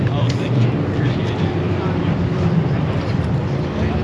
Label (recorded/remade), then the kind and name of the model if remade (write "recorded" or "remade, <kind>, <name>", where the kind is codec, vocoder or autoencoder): remade, vocoder, BigVGAN v2